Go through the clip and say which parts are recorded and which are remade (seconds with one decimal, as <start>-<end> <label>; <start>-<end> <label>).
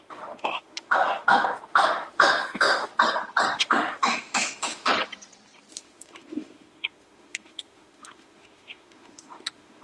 0.0-2.9 remade; 2.9-3.6 recorded; 3.6-4.9 remade; 4.9-5.7 recorded; 5.7-9.8 remade